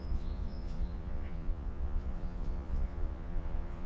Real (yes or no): no